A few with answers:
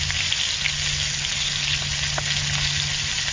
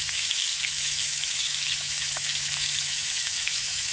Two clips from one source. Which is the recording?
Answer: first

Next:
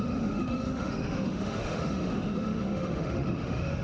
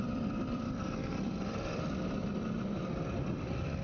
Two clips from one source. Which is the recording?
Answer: second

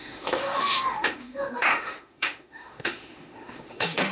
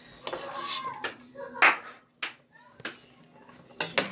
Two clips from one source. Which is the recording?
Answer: second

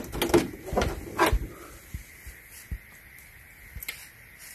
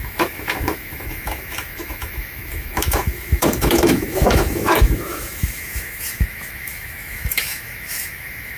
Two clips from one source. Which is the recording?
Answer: first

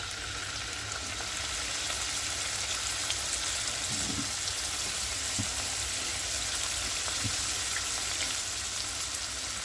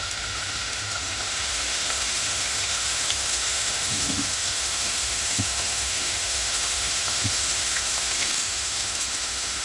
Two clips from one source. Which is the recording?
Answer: first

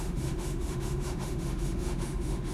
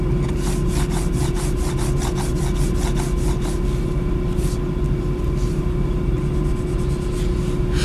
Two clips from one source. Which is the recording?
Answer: second